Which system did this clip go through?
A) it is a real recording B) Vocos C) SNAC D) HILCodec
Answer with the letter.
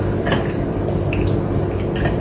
A